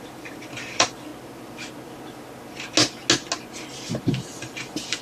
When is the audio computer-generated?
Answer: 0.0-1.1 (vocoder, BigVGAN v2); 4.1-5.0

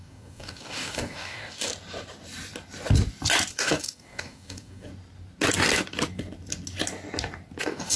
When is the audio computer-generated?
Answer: 0.0-1.7 (codec, DAC); 3.5-4.9; 7.6-8.0

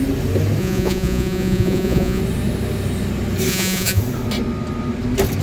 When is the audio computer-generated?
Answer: 0.6-2.2 (vocoder, Vocos); 3.5-4.0